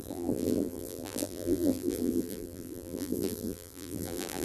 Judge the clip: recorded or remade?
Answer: remade